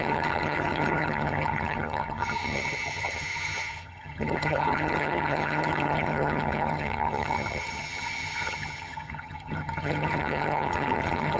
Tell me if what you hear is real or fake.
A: fake